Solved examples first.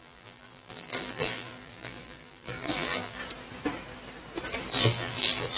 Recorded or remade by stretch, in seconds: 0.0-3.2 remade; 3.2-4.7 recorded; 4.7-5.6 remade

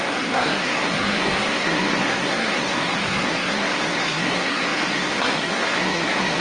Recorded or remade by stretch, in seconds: 0.0-6.4 remade

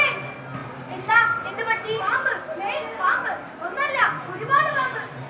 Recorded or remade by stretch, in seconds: 0.0-0.6 recorded; 0.6-1.5 remade; 1.5-5.3 recorded

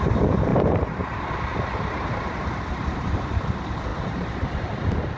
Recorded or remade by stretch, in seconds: 0.0-5.2 remade

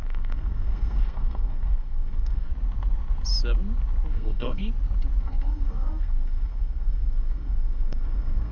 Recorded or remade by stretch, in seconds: 0.0-2.5 remade; 2.5-4.1 recorded; 4.1-4.6 remade; 4.6-5.2 recorded; 5.2-8.5 remade

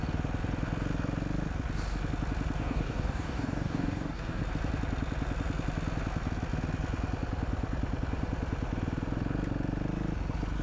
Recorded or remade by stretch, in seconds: 0.0-2.6 recorded; 2.6-4.4 remade; 4.4-10.6 recorded